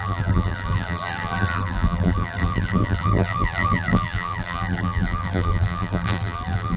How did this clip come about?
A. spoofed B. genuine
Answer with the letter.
A